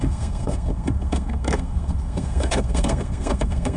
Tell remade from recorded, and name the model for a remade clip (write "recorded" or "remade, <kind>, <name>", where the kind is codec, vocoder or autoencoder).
remade, codec, SNAC